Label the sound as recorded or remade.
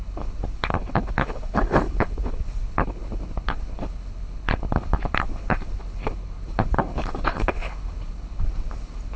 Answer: remade